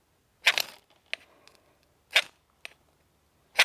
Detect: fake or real real